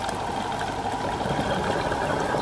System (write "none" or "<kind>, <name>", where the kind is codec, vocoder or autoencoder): none